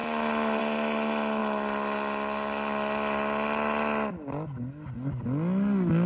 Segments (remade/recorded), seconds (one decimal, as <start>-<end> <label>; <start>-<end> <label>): 0.0-6.1 recorded